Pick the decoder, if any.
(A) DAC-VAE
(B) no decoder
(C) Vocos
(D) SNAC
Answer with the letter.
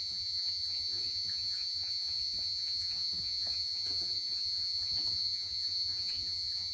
C